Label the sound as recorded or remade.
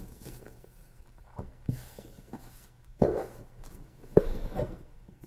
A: remade